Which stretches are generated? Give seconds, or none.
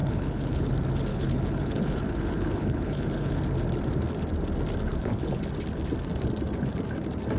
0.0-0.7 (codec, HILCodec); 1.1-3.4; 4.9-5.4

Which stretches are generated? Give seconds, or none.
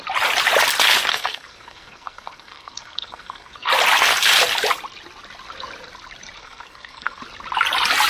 1.1-3.7 (codec, SNAC); 6.4-7.2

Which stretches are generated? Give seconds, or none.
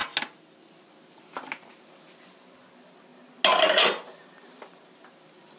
none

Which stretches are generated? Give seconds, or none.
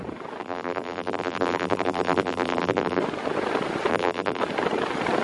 0.4-3.0 (vocoder, BigVGAN v2); 3.9-4.4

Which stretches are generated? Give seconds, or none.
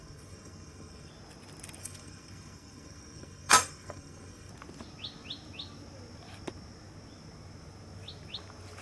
0.0-1.1 (codec, SNAC); 1.8-4.5